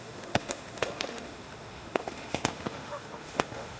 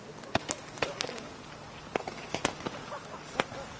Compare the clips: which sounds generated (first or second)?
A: first